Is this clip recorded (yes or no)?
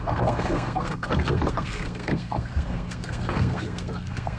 no